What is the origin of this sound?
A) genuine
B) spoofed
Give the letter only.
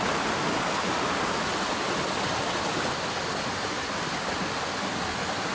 A